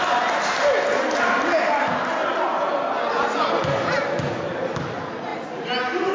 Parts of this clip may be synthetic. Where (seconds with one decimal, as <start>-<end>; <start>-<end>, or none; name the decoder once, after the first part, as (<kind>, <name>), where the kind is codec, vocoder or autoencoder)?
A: none